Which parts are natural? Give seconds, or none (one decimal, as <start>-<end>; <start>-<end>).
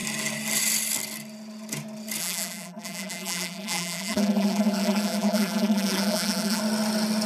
0.0-2.2; 6.6-7.3